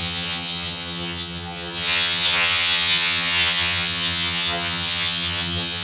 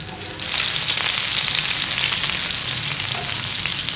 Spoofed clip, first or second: first